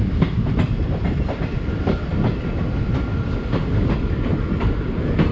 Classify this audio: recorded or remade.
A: recorded